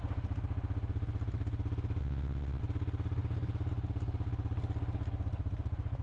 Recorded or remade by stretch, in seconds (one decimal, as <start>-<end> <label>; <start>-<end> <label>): 0.0-2.0 recorded; 2.0-2.6 remade; 2.6-6.0 recorded